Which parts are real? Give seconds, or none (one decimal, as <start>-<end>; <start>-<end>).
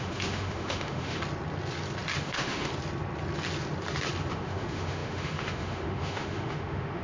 1.2-2.2; 2.7-4.3